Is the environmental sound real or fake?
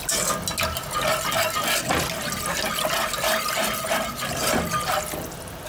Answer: real